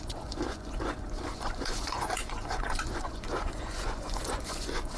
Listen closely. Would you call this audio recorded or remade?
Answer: remade